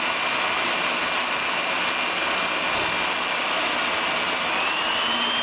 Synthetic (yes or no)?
no